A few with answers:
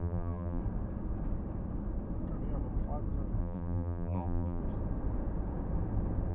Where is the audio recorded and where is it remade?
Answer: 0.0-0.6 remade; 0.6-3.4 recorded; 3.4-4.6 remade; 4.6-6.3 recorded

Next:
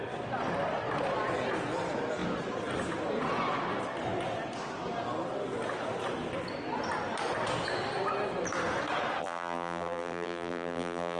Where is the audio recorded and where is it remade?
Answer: 0.0-9.2 recorded; 9.2-11.2 remade

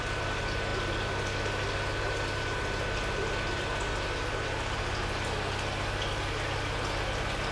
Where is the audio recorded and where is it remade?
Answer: 0.0-7.5 recorded